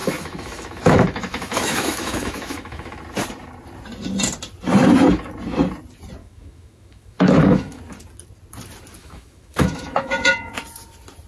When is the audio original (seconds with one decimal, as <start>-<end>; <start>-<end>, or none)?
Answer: 3.0-6.2; 7.8-9.0; 10.5-11.3